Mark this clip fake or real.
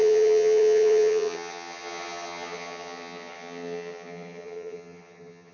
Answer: fake